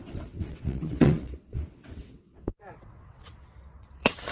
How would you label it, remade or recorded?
remade